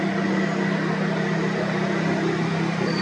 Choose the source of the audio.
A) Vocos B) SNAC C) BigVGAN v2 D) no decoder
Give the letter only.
D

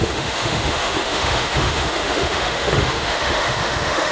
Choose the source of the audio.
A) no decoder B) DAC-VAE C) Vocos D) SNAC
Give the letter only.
B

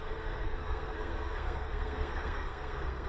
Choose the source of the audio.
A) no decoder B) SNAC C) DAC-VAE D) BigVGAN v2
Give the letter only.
B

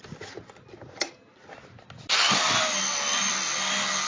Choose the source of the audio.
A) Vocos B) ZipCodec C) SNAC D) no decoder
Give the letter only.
D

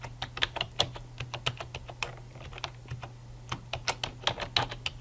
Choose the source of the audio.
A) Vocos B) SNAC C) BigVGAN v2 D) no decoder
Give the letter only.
D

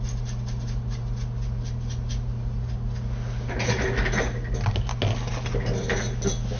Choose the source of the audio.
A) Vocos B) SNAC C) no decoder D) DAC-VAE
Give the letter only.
C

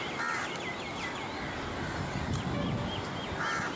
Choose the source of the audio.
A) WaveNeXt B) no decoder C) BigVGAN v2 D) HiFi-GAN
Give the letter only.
B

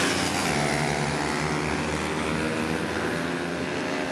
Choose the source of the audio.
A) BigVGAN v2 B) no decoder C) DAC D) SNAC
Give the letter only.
B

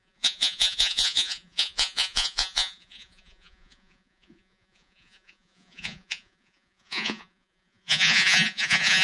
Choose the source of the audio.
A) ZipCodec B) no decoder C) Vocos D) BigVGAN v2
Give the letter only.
C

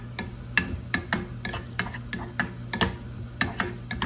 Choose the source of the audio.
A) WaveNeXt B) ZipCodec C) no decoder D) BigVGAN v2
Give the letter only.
C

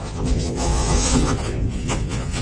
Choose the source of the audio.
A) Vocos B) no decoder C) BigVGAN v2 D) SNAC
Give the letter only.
A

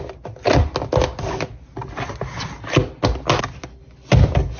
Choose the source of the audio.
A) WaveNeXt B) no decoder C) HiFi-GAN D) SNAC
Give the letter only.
B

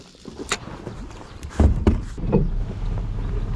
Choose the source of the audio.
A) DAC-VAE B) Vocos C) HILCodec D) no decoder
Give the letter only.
D